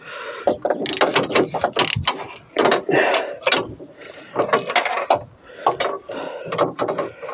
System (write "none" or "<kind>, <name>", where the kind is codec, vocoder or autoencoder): none